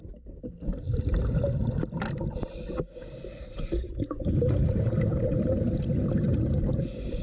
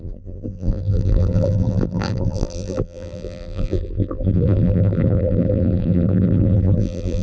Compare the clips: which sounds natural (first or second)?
first